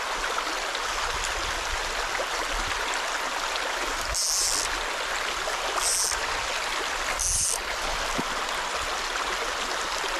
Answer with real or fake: real